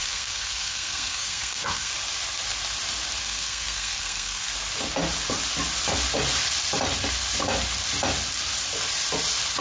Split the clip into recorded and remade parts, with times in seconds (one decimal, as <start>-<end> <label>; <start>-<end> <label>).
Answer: 0.0-1.9 remade; 1.9-3.2 recorded; 3.2-4.5 remade; 4.5-9.6 recorded